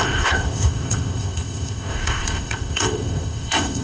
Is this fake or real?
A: fake